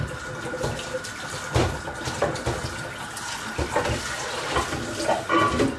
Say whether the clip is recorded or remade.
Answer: recorded